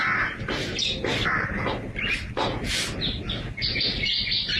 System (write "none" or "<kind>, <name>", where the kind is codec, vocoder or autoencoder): none